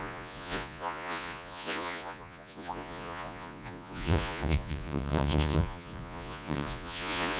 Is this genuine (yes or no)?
no